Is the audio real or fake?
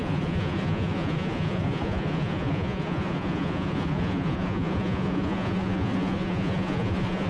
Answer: fake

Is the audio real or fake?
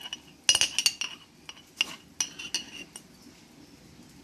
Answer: real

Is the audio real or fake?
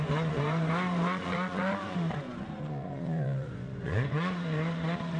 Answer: fake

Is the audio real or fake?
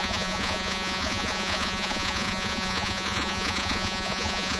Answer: fake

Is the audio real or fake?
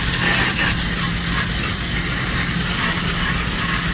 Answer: real